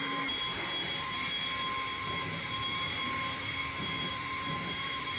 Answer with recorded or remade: remade